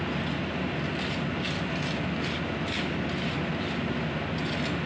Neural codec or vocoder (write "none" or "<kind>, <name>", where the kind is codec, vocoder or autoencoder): none